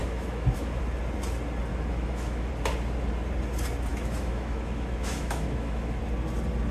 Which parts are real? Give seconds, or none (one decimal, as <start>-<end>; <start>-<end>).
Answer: 0.8-1.7; 2.5-3.9; 6.0-6.7